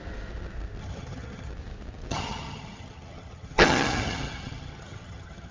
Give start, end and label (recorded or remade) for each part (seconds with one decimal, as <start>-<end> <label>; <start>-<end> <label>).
0.0-0.8 recorded; 0.8-1.5 remade; 1.5-2.1 recorded; 2.1-5.5 remade